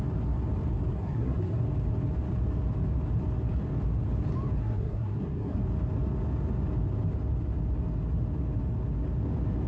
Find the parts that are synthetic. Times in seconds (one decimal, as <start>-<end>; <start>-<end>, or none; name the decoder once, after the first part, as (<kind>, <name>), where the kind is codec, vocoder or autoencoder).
0.9-1.6 (codec, SNAC); 4.6-5.6